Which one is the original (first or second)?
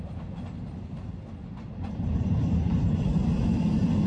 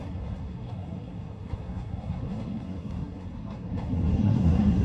first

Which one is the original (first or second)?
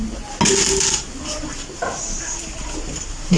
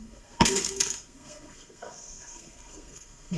first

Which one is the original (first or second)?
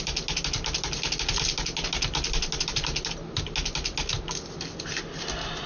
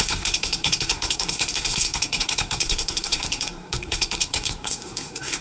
first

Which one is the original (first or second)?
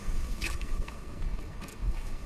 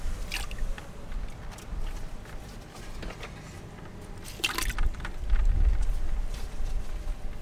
second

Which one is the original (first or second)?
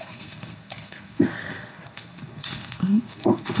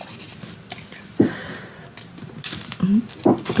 second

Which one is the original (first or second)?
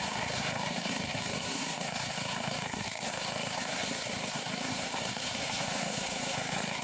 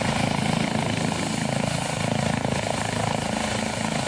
second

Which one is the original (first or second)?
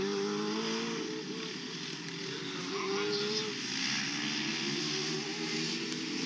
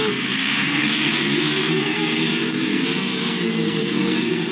first